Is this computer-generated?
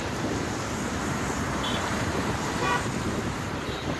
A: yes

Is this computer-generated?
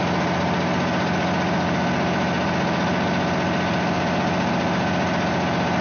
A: no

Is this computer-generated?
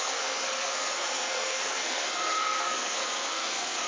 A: yes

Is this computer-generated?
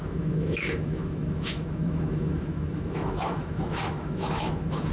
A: yes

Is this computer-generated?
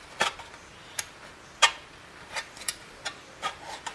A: yes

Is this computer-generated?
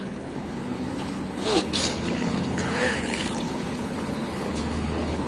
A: yes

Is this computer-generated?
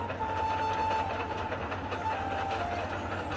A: no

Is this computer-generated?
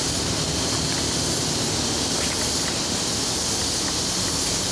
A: no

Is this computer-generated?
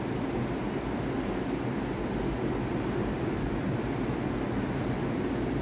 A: no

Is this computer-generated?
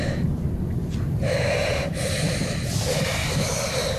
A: no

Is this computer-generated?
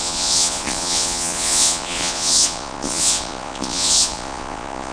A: yes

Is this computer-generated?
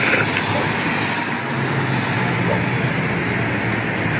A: no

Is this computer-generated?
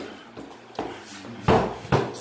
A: no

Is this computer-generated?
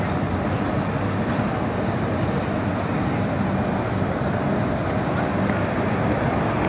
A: no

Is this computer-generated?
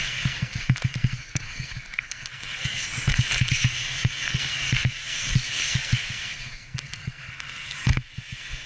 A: yes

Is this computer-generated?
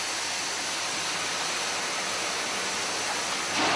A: no